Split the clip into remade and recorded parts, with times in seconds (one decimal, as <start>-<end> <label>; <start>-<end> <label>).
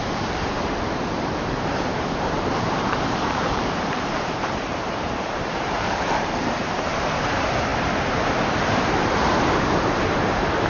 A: 0.0-10.7 remade